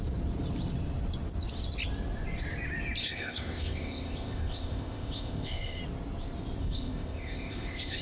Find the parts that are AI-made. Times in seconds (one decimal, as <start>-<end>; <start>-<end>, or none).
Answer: 3.0-5.8; 6.6-8.0

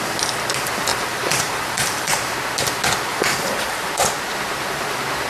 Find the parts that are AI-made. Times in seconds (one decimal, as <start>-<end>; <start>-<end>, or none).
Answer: 0.9-2.1; 3.1-3.9

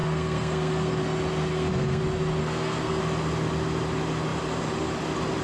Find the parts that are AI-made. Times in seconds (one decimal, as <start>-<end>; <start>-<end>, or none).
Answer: 0.0-1.0; 1.5-2.0; 2.4-3.0

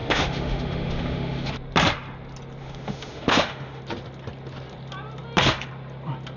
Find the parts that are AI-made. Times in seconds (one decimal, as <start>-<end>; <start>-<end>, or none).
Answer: 0.0-1.5; 2.6-3.8

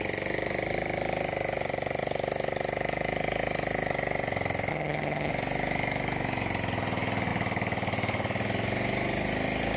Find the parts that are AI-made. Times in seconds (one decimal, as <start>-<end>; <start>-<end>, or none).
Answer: 4.7-5.3

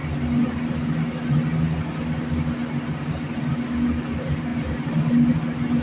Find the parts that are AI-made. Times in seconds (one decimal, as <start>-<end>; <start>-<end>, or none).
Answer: 4.5-5.1